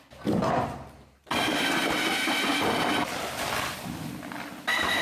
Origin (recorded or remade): recorded